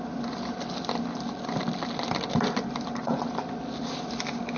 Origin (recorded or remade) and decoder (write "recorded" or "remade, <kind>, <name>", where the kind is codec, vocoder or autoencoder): recorded